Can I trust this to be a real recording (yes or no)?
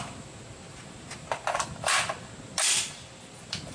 no